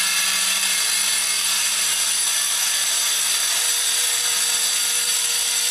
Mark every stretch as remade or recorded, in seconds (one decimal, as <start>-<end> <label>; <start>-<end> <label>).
0.0-1.2 recorded; 1.2-1.9 remade; 1.9-2.3 recorded; 2.3-3.1 remade; 3.1-5.7 recorded